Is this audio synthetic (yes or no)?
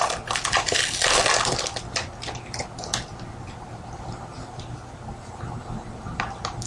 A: no